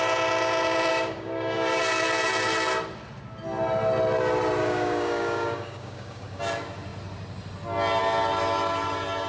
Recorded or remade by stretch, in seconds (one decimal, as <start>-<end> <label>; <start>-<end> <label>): 0.0-0.9 recorded; 0.9-1.8 remade; 1.8-4.6 recorded; 4.6-6.4 remade; 6.4-9.3 recorded